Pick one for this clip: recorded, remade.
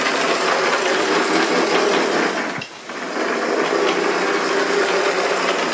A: recorded